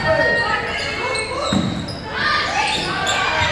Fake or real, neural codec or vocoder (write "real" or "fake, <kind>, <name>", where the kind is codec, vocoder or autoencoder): real